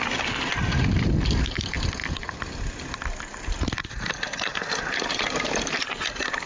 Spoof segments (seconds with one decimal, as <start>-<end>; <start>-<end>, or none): none